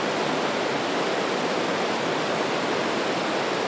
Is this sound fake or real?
real